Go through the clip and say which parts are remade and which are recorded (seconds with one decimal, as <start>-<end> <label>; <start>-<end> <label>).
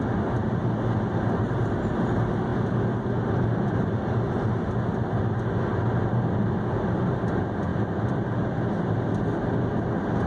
0.0-10.3 recorded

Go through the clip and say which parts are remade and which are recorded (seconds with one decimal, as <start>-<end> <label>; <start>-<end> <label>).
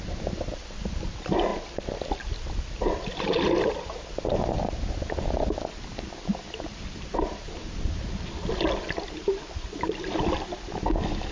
0.0-11.3 recorded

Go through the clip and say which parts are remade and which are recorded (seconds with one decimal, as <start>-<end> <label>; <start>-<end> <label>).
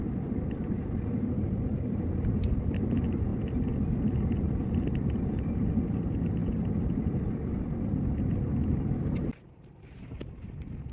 0.0-10.9 recorded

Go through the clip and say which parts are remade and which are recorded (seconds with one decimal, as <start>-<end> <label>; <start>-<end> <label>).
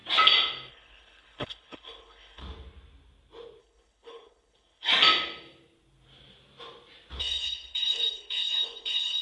0.0-0.7 recorded; 0.7-2.4 remade; 2.4-3.6 recorded; 3.6-4.9 remade; 4.9-7.2 recorded; 7.2-9.2 remade